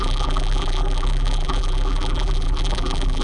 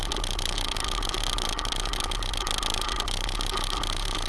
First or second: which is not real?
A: first